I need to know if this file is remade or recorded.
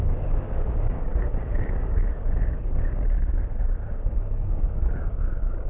remade